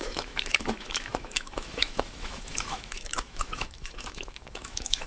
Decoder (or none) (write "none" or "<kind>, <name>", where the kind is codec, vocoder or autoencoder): autoencoder, DAC-VAE